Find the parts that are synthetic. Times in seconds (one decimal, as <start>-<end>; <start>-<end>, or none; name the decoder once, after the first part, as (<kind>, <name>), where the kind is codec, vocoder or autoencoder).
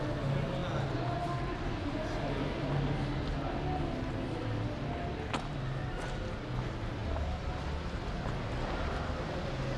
none